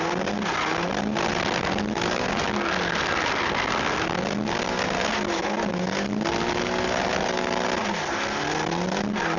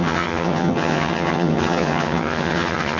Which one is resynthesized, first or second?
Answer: second